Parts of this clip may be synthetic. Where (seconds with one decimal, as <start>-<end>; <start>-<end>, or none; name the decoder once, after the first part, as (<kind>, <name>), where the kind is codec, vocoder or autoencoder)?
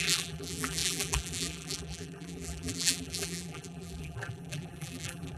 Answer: 0.0-5.4 (vocoder, BigVGAN v2)